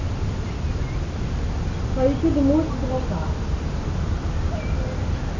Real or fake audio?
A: real